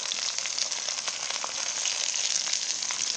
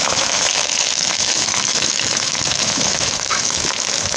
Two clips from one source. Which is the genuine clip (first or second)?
first